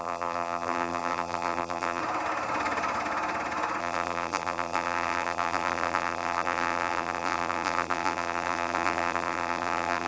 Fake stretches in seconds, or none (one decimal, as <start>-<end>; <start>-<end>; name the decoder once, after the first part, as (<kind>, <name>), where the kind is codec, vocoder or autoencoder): 0.0-2.0 (vocoder, BigVGAN v2); 3.8-10.1